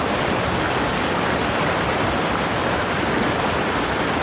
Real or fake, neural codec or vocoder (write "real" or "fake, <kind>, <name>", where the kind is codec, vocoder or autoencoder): real